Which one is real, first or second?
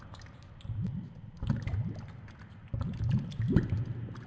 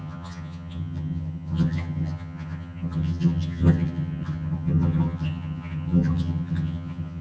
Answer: first